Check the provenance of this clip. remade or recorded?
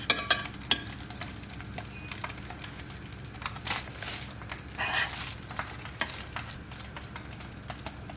recorded